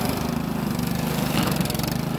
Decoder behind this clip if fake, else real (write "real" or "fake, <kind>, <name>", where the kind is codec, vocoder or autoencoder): real